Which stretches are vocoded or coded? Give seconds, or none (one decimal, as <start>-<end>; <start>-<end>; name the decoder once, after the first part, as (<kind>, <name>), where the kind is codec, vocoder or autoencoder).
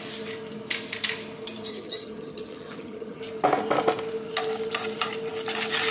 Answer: 1.7-3.2 (vocoder, HiFi-GAN)